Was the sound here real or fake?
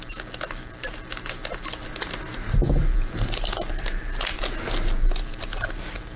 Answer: real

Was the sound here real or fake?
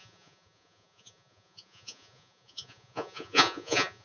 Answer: fake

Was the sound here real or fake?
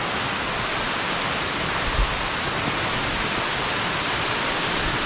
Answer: real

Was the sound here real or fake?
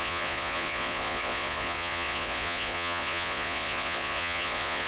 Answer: fake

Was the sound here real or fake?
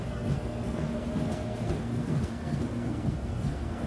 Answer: fake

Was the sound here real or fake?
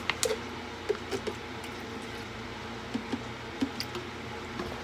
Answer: real